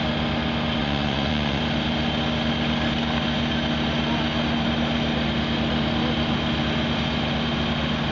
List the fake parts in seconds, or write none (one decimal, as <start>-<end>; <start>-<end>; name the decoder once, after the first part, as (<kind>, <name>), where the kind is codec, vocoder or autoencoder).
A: 0.8-1.6 (vocoder, Vocos)